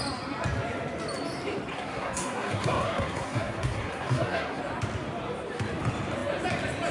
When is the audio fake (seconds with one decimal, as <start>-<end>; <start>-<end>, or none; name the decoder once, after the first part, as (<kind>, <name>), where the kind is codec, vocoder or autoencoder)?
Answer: 1.7-4.6 (codec, SNAC)